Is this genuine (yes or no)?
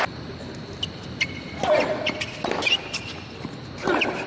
yes